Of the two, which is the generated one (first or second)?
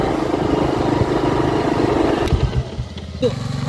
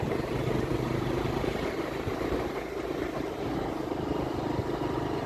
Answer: second